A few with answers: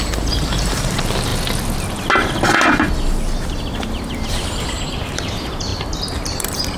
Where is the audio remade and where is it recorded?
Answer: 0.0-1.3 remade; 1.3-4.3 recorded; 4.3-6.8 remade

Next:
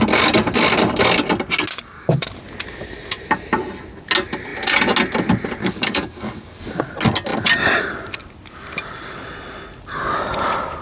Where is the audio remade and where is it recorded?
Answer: 0.0-1.7 recorded; 1.7-2.3 remade; 2.3-5.6 recorded; 5.6-6.8 remade; 6.8-10.8 recorded

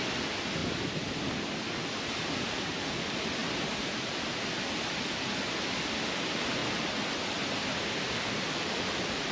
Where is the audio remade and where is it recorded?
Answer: 0.0-0.6 remade; 0.6-1.8 recorded; 1.8-3.4 remade; 3.4-4.2 recorded; 4.2-9.3 remade

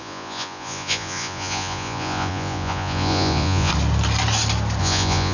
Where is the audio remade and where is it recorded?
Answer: 0.0-3.7 remade; 3.7-4.8 recorded; 4.8-5.3 remade